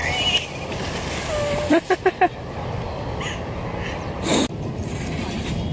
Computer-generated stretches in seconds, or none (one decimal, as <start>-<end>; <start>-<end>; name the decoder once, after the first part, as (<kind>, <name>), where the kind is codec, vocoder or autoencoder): none